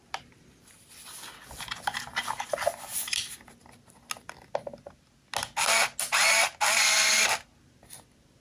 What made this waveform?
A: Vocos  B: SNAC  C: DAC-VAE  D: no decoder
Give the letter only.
D